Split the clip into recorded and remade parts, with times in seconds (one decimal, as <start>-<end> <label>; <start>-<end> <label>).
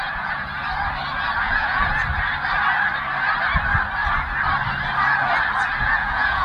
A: 0.0-0.6 remade; 0.6-1.4 recorded; 1.4-2.0 remade; 2.0-5.8 recorded; 5.8-6.4 remade